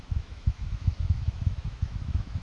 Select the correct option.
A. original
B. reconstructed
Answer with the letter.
B